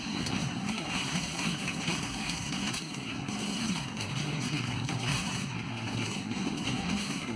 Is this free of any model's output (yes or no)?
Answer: no